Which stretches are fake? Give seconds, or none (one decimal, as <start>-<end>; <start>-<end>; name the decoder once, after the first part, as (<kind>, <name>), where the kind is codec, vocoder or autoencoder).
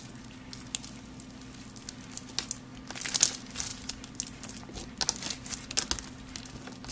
none